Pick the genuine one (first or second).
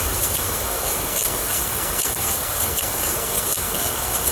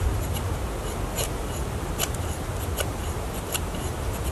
second